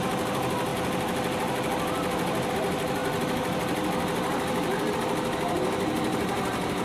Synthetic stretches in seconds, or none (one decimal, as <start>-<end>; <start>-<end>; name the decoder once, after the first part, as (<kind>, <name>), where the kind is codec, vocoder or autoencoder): none

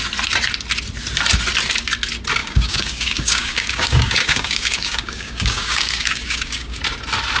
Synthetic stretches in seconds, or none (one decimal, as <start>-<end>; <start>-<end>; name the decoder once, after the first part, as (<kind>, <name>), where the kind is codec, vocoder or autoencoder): 2.4-6.8 (codec, DAC)

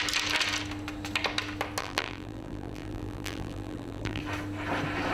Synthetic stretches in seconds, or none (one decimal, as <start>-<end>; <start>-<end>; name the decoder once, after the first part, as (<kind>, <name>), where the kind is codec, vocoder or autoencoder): 1.8-4.2 (vocoder, BigVGAN v2)

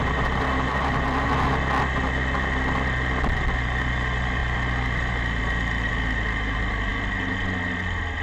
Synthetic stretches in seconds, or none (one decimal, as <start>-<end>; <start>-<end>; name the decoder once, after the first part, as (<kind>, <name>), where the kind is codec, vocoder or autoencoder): 0.0-1.3 (vocoder, BigVGAN v2)